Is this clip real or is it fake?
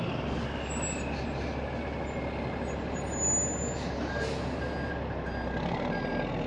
real